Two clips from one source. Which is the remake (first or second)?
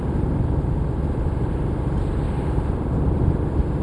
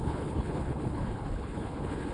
second